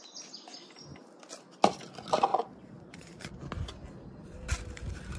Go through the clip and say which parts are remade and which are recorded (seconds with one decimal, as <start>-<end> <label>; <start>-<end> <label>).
0.0-2.3 recorded; 2.3-3.3 remade; 3.3-5.2 recorded

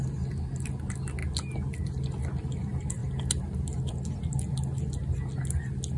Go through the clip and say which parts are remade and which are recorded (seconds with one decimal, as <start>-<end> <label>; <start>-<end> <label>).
0.0-6.0 recorded

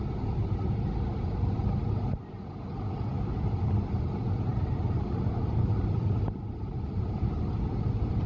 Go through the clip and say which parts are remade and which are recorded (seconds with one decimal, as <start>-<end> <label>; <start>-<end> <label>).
0.0-8.3 recorded

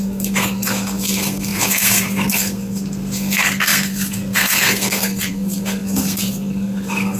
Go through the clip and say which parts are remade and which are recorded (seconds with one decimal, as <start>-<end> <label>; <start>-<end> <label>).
0.0-7.2 remade

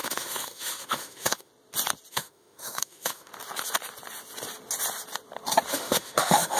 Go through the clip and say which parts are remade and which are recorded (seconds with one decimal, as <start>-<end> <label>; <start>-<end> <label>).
0.0-1.5 remade; 1.5-2.1 recorded; 2.1-3.3 remade; 3.3-5.7 recorded; 5.7-6.6 remade